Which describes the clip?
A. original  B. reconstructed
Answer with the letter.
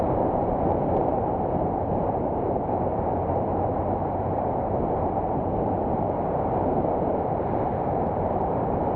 B